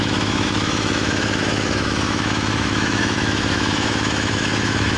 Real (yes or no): no